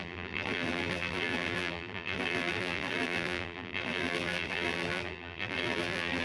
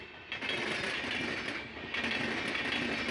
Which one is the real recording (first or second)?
second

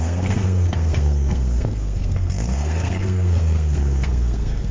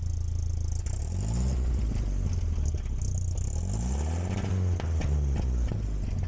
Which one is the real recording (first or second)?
second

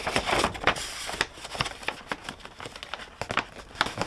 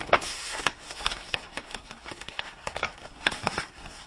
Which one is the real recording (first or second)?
first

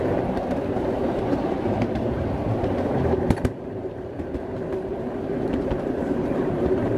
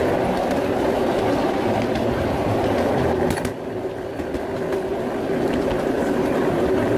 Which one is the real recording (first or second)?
second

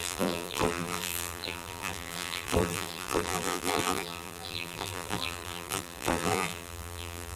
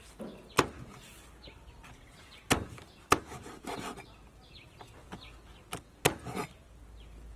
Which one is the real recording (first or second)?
second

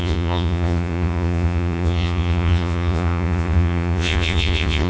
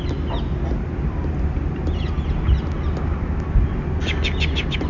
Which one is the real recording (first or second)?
second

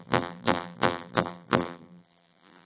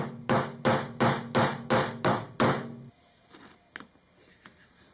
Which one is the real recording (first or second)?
second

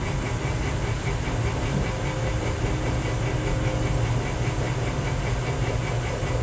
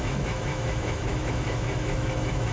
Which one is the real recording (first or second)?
first